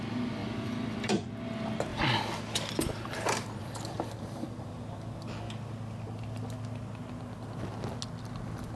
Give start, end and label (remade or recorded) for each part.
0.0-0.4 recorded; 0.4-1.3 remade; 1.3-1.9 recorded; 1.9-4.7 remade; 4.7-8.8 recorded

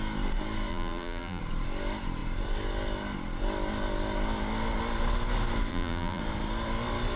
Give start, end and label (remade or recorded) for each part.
0.0-0.7 recorded; 0.7-1.4 remade; 1.4-5.7 recorded; 5.7-6.2 remade; 6.2-7.2 recorded

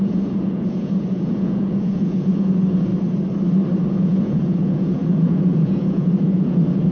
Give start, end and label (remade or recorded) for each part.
0.0-2.9 remade; 2.9-3.9 recorded; 3.9-6.9 remade

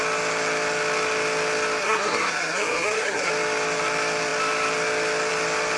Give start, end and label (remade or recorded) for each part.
0.0-1.8 recorded; 1.8-3.3 remade; 3.3-5.8 recorded

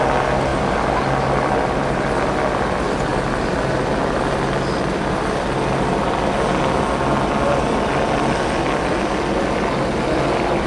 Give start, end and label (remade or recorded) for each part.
0.0-10.7 recorded

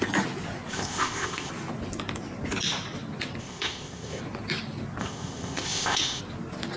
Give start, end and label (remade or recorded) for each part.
0.0-0.7 recorded; 0.7-1.5 remade; 1.5-3.4 recorded; 3.4-4.2 remade; 4.2-5.0 recorded; 5.0-6.2 remade; 6.2-6.8 recorded

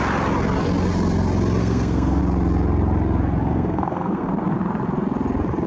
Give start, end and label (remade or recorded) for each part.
0.0-1.6 recorded; 1.6-2.2 remade; 2.2-3.5 recorded; 3.5-4.3 remade; 4.3-5.7 recorded

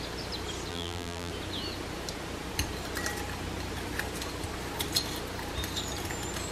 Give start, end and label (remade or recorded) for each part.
0.0-0.7 recorded; 0.7-1.3 remade; 1.3-6.5 recorded